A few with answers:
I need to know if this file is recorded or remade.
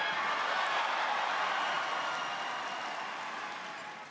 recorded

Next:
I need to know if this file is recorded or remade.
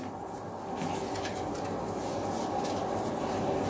recorded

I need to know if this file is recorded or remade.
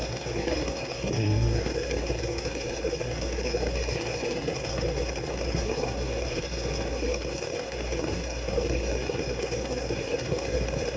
remade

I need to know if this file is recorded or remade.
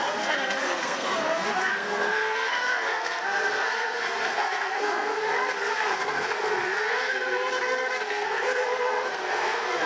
remade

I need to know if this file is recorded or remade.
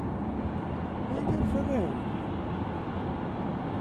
recorded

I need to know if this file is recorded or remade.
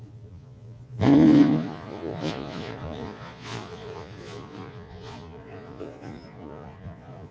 remade